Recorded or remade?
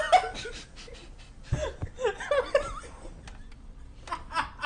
recorded